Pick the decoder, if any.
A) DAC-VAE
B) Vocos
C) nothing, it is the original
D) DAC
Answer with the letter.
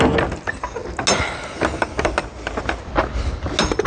C